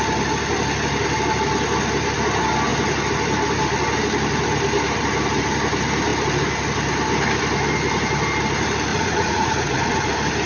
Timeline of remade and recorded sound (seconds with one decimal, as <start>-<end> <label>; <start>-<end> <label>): 0.0-8.9 recorded; 8.9-10.1 remade; 10.1-10.5 recorded